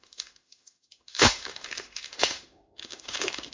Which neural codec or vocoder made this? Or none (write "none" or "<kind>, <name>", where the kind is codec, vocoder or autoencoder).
autoencoder, DAC-VAE